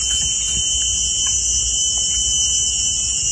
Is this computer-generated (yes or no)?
no